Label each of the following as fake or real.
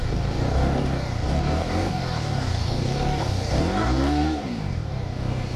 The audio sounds fake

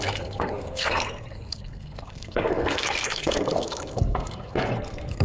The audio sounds fake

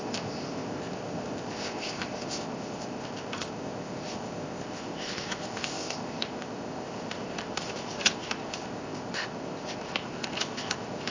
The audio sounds fake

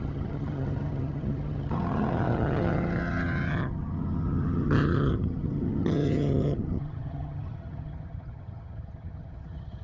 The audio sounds fake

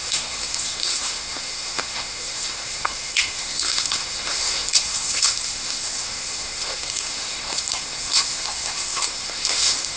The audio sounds fake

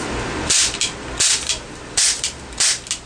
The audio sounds real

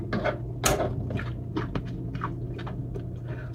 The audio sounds real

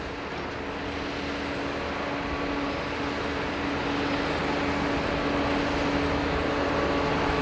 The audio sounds real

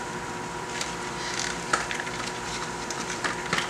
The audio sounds fake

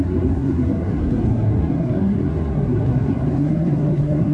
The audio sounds fake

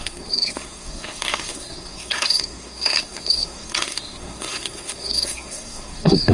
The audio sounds fake